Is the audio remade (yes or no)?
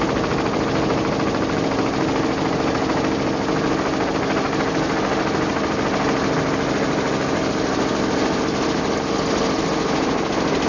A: no